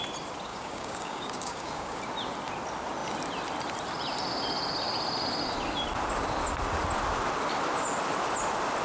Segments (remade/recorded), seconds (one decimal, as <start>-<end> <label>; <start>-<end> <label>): 0.0-0.5 recorded; 0.5-2.0 remade; 2.0-8.8 recorded

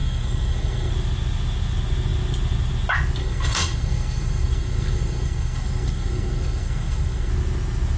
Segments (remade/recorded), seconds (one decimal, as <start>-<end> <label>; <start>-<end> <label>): 0.0-0.9 remade; 0.9-3.2 recorded; 3.2-7.3 remade; 7.3-8.0 recorded

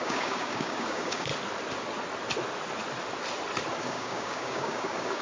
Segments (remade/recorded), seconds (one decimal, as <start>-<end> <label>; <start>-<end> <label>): 0.0-1.3 remade; 1.3-3.8 recorded; 3.8-5.2 remade